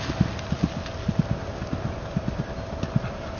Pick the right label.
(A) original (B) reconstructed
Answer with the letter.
A